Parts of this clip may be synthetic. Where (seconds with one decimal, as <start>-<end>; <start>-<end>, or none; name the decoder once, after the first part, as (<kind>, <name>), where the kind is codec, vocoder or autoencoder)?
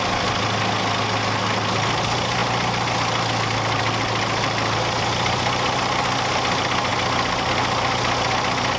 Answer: none